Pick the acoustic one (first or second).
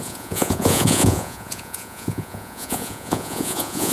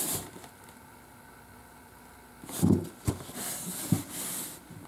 second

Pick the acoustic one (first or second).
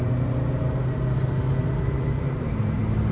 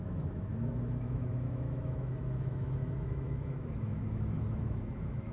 first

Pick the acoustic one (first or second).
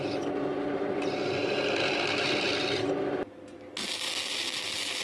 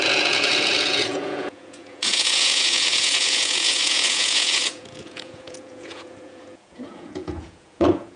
first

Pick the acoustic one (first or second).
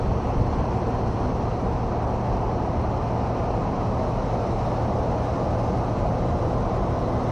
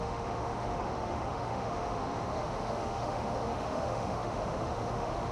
first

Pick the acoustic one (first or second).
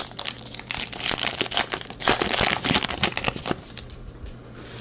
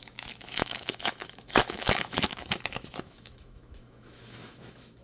first